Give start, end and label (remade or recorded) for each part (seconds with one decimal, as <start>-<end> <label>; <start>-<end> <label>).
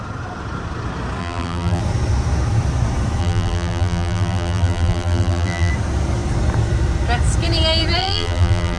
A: 0.0-1.2 recorded; 1.2-1.8 remade; 1.8-3.2 recorded; 3.2-5.7 remade; 5.7-8.0 recorded; 8.0-8.8 remade